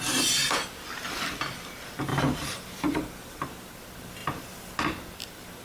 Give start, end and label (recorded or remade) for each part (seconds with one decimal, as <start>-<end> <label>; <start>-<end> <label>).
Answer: 0.0-2.1 recorded; 2.1-3.7 remade; 3.7-5.6 recorded